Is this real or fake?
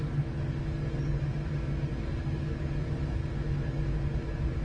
real